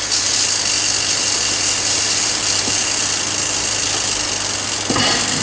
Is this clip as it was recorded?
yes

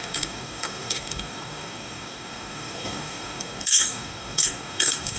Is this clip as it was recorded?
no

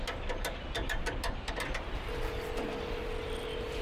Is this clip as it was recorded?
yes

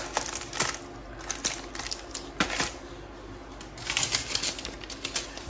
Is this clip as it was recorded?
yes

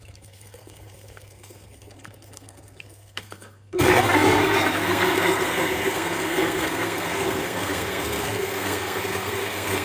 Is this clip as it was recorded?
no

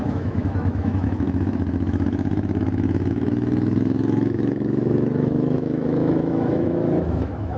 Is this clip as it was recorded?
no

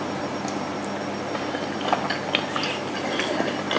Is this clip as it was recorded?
yes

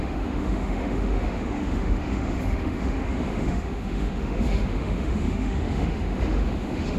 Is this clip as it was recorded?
no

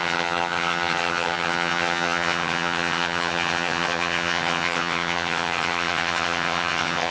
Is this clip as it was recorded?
no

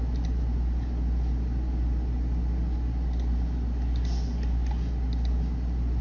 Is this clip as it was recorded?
yes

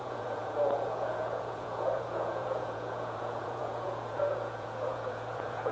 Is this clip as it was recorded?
no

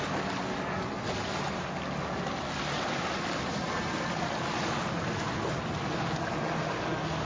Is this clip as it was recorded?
yes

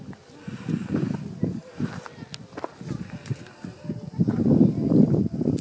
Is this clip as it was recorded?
yes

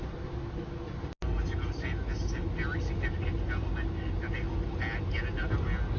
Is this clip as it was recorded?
yes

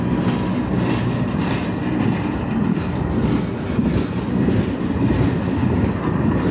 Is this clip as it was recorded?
yes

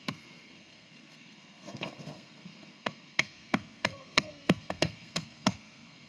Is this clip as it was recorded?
no